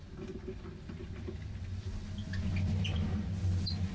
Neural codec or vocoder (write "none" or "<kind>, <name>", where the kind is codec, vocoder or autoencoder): none